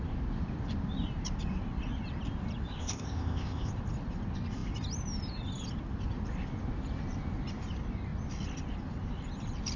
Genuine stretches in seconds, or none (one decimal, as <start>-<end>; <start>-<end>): 0.0-2.8; 3.7-9.8